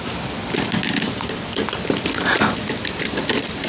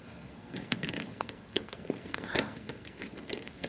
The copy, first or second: second